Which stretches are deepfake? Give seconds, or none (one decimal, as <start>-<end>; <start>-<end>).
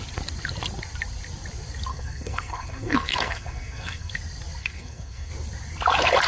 1.9-4.1; 4.6-5.3